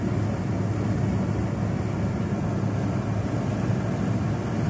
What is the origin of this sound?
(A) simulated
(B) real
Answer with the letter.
B